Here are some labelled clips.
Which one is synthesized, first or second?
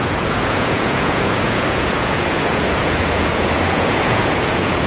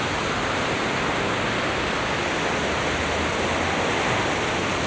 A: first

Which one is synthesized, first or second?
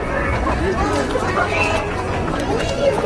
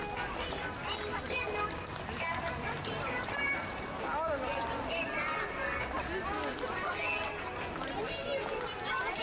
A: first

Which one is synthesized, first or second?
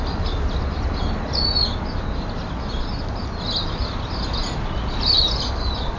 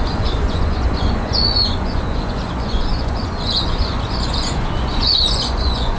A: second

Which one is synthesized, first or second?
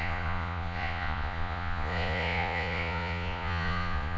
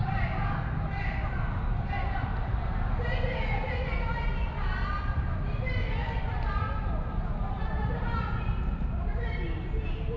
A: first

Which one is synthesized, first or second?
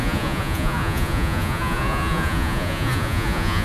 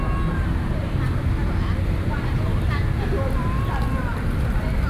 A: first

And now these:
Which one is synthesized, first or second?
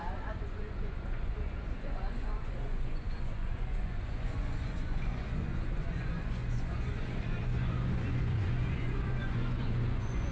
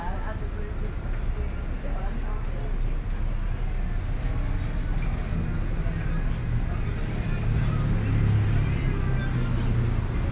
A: first